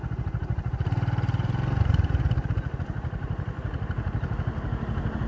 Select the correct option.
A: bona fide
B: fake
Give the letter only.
B